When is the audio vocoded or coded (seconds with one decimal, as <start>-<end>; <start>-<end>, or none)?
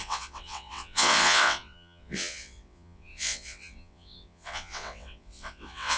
0.0-6.0